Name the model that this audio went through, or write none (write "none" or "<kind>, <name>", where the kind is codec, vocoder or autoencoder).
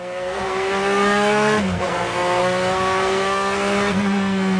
codec, SNAC